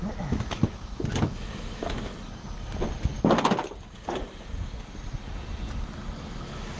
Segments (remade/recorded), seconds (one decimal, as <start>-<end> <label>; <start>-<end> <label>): 0.0-0.6 remade; 0.6-1.1 recorded; 1.1-2.1 remade; 2.1-6.2 recorded; 6.2-6.8 remade